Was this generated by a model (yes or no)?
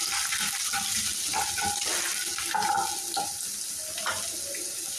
no